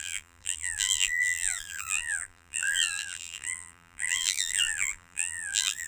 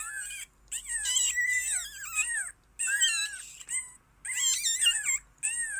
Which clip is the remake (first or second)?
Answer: first